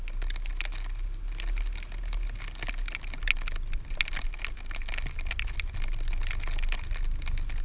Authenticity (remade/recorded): recorded